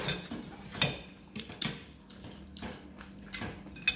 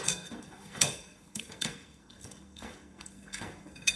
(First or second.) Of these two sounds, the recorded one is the first